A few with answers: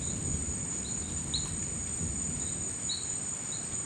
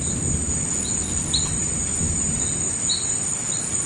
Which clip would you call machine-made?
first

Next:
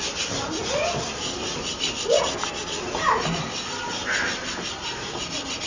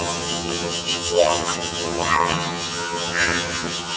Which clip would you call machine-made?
second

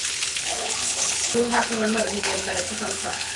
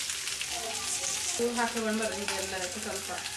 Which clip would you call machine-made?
first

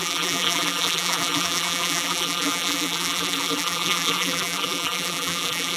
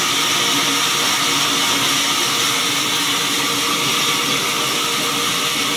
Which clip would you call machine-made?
first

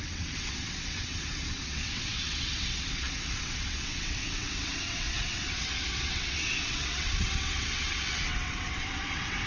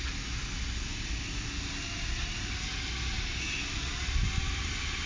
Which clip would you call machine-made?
first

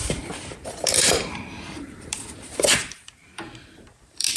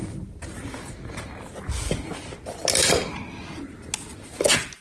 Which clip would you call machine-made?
first